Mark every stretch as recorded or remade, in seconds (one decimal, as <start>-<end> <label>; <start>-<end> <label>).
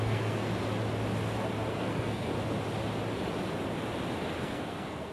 0.0-0.5 remade; 0.5-1.7 recorded; 1.7-2.3 remade; 2.3-4.4 recorded; 4.4-5.1 remade